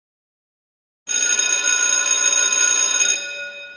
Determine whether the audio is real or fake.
real